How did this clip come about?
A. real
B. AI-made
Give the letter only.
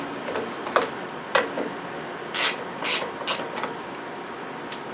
A